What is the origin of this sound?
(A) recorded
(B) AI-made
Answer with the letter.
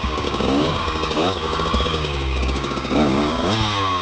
B